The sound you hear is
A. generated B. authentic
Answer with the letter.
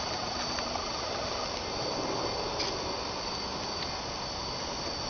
B